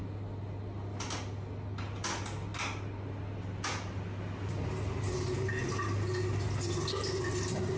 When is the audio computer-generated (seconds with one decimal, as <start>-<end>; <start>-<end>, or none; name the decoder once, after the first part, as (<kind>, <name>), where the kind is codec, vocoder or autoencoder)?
none

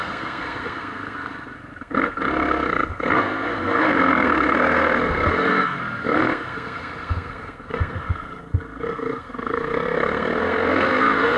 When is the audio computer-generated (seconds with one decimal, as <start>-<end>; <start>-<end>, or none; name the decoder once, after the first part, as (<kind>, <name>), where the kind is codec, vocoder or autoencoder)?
0.0-11.4 (codec, SNAC)

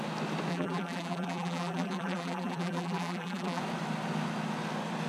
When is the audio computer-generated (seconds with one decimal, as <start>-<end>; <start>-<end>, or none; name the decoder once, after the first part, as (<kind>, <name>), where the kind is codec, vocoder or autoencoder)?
0.5-3.6 (vocoder, BigVGAN v2)

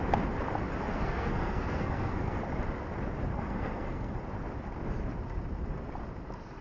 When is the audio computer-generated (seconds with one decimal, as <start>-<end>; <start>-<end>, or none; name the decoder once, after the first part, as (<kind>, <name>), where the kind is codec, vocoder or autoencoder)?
0.9-2.4 (codec, SNAC); 3.3-4.2

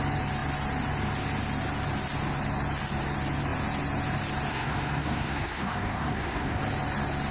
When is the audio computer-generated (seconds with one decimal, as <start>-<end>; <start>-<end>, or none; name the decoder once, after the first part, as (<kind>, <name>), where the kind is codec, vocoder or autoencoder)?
4.5-6.6 (codec, SNAC)